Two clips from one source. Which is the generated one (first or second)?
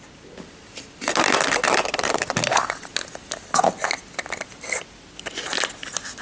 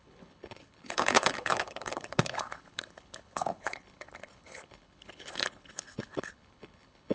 second